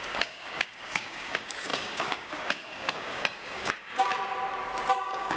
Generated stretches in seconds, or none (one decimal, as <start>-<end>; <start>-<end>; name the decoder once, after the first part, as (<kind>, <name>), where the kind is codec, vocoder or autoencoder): 0.0-4.1 (codec, DAC); 5.0-5.4